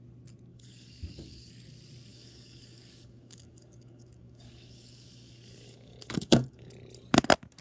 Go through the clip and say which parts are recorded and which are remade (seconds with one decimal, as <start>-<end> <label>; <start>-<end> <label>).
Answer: 0.0-0.5 recorded; 0.5-1.5 remade; 1.5-2.1 recorded; 2.1-6.7 remade; 6.7-7.6 recorded